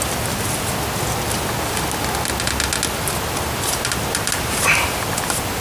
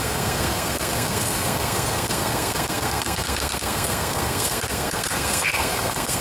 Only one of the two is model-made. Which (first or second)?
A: second